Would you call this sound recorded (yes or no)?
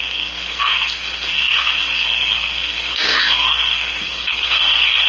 no